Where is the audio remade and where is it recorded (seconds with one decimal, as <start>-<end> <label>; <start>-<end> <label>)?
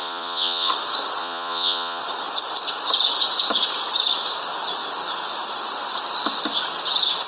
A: 0.0-0.7 remade; 0.7-1.2 recorded; 1.2-2.0 remade; 2.0-7.3 recorded